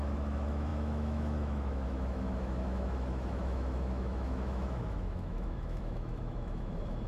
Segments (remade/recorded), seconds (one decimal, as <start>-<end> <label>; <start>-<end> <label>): 0.0-7.1 remade